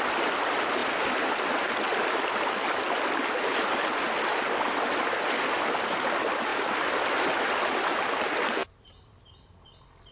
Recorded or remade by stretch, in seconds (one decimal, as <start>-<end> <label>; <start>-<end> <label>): 0.0-7.9 recorded; 7.9-9.7 remade; 9.7-10.1 recorded